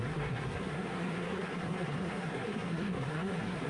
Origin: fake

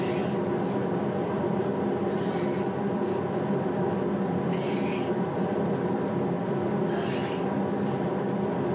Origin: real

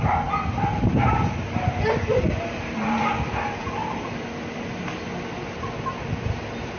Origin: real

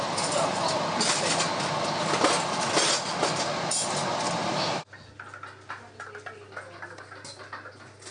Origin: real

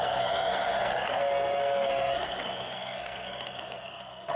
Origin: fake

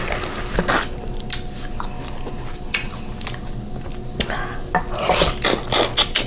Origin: real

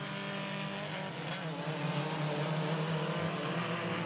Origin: real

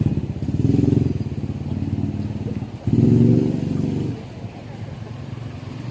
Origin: real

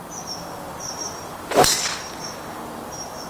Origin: real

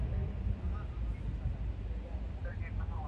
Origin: real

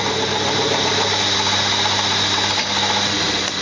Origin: real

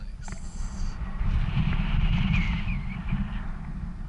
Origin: real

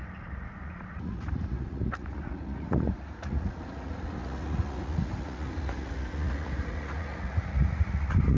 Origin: fake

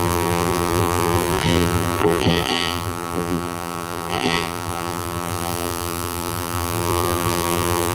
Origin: fake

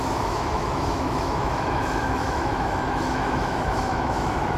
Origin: fake